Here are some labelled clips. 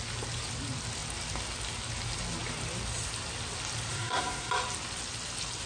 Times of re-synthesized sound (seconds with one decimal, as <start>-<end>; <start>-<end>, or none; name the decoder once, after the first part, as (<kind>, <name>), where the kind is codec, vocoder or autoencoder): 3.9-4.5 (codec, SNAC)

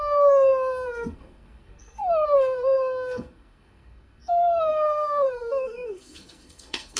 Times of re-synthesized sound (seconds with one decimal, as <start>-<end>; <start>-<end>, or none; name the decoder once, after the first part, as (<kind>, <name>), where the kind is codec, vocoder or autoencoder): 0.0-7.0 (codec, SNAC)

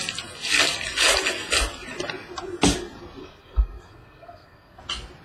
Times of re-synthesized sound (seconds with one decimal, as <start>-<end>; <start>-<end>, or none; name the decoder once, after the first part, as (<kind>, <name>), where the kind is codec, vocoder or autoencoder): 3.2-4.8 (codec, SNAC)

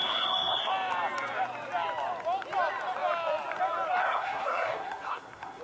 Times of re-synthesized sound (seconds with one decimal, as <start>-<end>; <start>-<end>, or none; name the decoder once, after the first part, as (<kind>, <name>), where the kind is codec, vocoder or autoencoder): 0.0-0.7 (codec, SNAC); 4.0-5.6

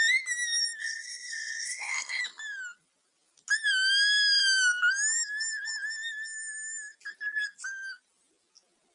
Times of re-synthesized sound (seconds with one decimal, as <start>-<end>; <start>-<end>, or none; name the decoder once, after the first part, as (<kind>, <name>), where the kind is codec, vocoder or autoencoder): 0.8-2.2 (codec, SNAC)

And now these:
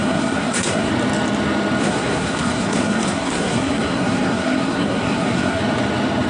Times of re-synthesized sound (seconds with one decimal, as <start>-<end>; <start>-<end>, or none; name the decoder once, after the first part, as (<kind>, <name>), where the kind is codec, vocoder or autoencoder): 0.0-0.9 (codec, SNAC); 1.8-5.6

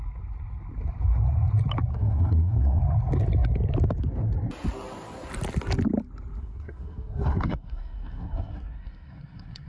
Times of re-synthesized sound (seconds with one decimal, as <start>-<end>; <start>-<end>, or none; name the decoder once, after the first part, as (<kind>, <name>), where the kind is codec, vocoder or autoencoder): 1.9-2.8 (codec, SNAC); 6.4-9.7